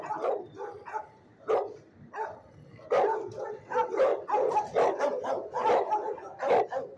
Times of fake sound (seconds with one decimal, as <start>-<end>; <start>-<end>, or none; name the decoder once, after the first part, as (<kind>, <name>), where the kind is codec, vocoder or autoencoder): none